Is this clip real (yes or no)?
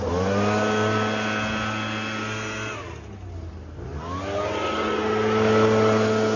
yes